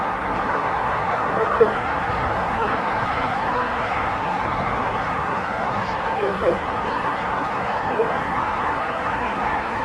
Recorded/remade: remade